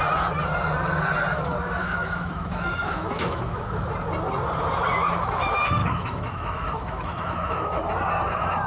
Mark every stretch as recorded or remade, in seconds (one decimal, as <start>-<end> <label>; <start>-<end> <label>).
0.0-1.8 recorded; 1.8-3.9 remade; 3.9-5.8 recorded; 5.8-7.8 remade; 7.8-8.7 recorded